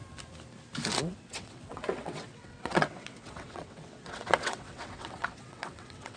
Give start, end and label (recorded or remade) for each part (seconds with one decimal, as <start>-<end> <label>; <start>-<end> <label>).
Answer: 0.0-1.0 recorded; 1.0-6.2 remade